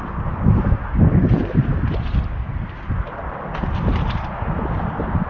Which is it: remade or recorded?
recorded